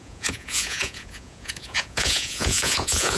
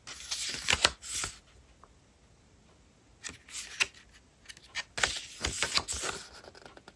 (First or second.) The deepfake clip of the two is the first